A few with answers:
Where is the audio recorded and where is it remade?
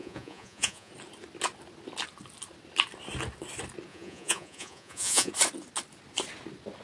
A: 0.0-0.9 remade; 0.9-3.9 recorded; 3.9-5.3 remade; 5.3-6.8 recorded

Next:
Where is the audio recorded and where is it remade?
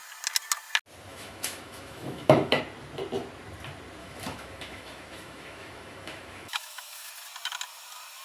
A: 0.0-1.1 recorded; 1.1-2.6 remade; 2.6-4.0 recorded; 4.0-7.1 remade; 7.1-8.2 recorded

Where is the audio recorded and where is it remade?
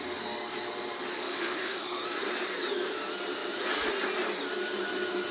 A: 0.0-1.1 recorded; 1.1-2.0 remade; 2.0-5.3 recorded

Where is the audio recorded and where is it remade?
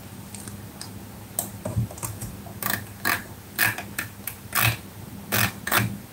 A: 0.0-6.1 recorded